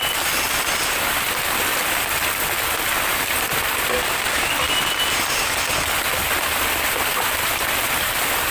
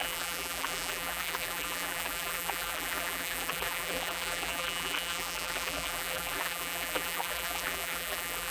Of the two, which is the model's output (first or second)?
second